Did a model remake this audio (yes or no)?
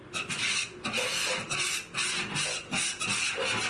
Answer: no